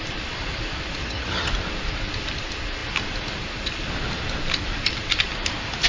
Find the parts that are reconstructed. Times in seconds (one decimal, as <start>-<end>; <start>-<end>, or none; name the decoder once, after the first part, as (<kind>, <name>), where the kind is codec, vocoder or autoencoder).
1.0-1.5 (vocoder, HiFi-GAN)